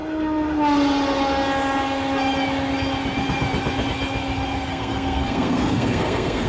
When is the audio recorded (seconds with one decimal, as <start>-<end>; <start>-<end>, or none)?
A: 0.0-4.7